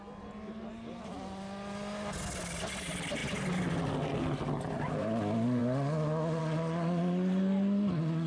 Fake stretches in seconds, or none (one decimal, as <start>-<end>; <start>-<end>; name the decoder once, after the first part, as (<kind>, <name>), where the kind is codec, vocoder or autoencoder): none

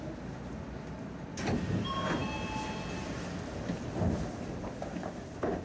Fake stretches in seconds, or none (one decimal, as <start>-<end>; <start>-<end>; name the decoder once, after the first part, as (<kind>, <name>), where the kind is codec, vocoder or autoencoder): none

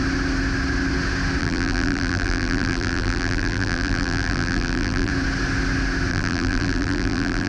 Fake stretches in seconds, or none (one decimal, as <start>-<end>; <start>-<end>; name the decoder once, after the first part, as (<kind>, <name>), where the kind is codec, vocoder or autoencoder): 1.4-5.1 (vocoder, BigVGAN v2); 6.1-7.5

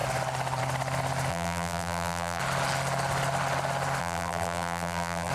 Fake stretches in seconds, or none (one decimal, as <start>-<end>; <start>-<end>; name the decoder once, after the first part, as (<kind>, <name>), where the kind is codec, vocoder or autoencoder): 1.3-2.4 (vocoder, BigVGAN v2); 4.0-5.3